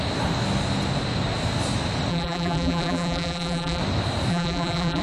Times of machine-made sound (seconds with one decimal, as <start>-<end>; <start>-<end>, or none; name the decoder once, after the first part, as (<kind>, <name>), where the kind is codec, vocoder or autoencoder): 2.1-3.8 (vocoder, BigVGAN v2); 4.3-5.0